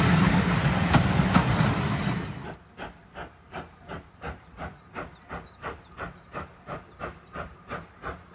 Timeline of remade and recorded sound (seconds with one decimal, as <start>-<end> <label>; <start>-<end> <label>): 0.0-3.0 recorded; 3.0-8.3 remade